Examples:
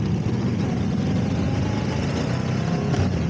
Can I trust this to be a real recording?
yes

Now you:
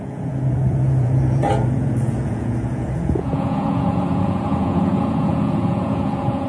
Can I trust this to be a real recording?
no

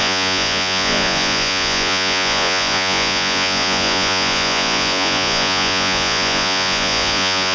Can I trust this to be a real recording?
no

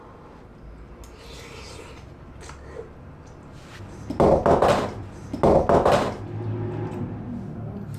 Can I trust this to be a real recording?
yes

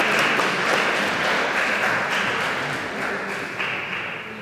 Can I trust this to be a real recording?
yes